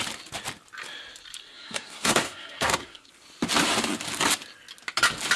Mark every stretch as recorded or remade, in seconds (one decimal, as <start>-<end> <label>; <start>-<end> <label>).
0.0-1.4 recorded; 1.4-3.1 remade; 3.1-5.4 recorded